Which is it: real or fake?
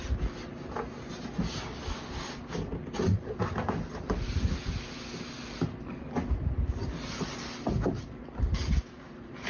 real